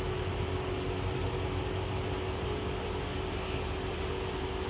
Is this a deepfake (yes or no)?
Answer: no